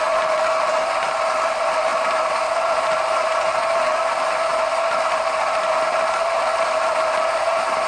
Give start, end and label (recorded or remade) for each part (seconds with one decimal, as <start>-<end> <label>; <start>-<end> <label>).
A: 0.0-7.9 remade